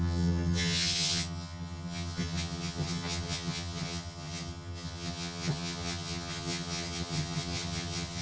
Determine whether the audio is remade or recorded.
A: remade